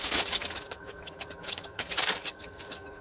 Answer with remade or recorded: remade